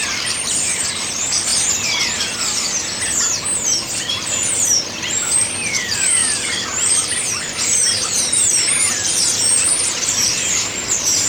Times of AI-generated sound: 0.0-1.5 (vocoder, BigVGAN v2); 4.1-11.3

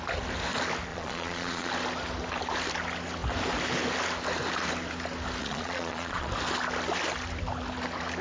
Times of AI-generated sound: 0.9-1.7 (vocoder, Vocos); 5.4-6.3

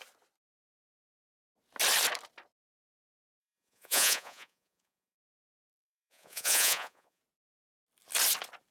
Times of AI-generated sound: 3.4-7.2 (vocoder, Vocos)

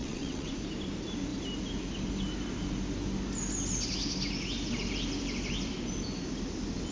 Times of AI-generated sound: 0.0-0.5 (vocoder, WaveNeXt)